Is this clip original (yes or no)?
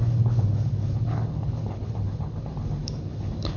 no